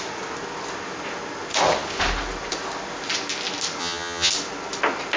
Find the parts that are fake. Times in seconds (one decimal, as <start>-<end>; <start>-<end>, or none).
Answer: 3.8-4.3